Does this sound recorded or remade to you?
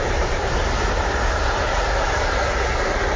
remade